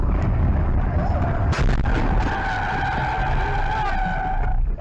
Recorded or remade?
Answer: recorded